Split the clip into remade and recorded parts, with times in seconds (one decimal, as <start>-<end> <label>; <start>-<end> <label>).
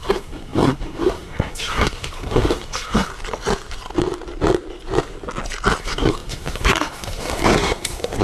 0.0-3.1 remade; 3.1-5.8 recorded; 5.8-8.2 remade